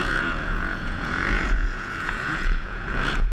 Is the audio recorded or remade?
remade